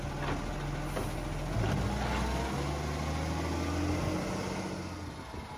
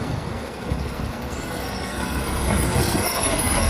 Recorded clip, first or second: first